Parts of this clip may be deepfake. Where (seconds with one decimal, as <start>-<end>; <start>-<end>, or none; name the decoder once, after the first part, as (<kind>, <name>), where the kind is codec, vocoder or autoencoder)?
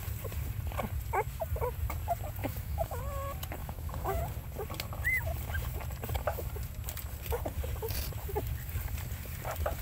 2.4-3.0 (autoencoder, DAC-VAE); 3.6-4.2